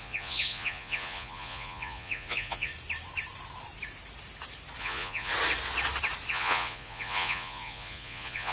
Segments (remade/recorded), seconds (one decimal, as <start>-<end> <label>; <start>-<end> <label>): 0.0-2.7 remade; 2.7-4.8 recorded; 4.8-5.3 remade; 5.3-6.3 recorded; 6.3-8.5 remade